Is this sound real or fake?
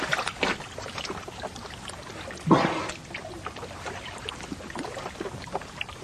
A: real